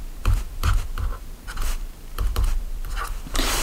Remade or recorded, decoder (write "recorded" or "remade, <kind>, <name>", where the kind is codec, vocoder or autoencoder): remade, vocoder, BigVGAN v2